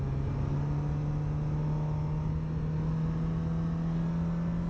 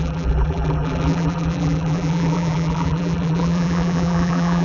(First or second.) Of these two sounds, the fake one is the second